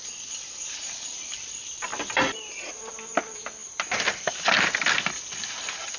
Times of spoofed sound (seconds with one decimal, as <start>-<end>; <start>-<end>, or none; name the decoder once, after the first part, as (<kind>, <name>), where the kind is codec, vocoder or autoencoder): none